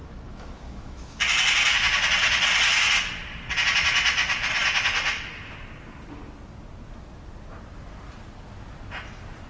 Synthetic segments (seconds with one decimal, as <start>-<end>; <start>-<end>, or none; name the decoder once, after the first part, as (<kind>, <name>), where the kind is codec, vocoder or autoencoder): 0.0-1.2 (autoencoder, DAC-VAE)